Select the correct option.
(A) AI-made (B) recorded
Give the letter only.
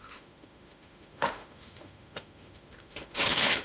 A